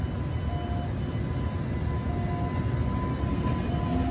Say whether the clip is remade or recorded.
recorded